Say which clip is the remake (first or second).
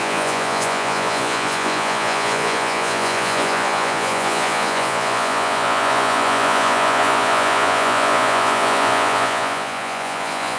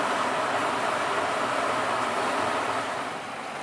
first